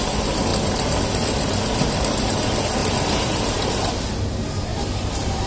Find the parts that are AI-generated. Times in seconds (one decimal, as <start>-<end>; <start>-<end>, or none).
0.5-1.0; 2.8-3.7; 4.7-5.5